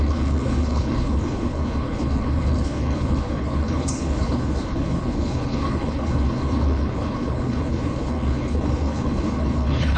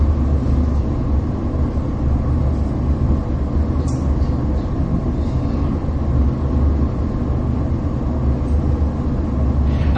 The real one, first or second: second